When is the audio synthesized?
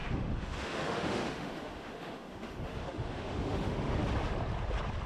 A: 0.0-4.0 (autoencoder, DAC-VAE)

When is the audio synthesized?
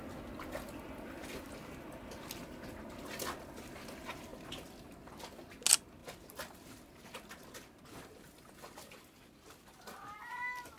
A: 4.3-4.9 (vocoder, BigVGAN v2); 6.0-10.8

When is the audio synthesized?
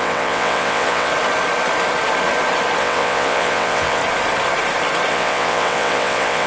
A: 0.0-1.1 (vocoder, WaveNeXt); 2.8-4.0; 5.1-6.5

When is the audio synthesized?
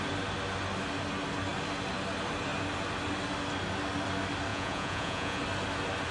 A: 4.5-5.4 (vocoder, Vocos)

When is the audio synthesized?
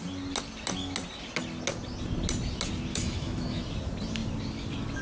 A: 2.9-3.6 (autoencoder, DAC-VAE)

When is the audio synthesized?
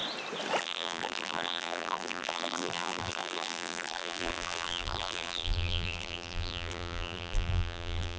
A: 0.6-8.2 (vocoder, BigVGAN v2)